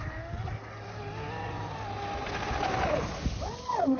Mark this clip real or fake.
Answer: real